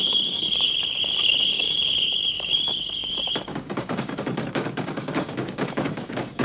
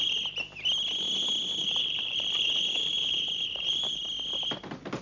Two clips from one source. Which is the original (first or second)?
second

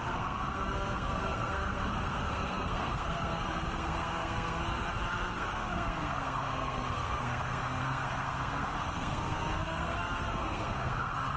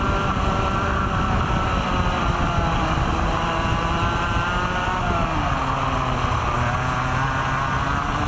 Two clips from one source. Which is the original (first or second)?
second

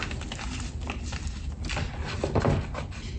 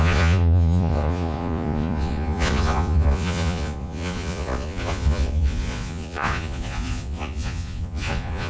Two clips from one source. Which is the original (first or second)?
first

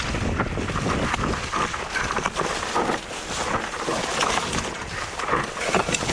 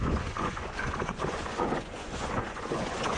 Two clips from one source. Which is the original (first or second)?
first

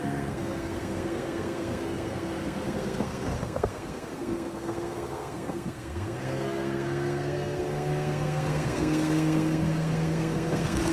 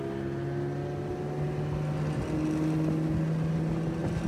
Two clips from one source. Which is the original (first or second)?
second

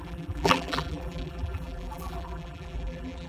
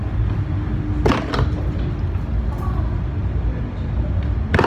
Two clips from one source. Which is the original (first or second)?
second